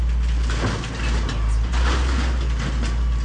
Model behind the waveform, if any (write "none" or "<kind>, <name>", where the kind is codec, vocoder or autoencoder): none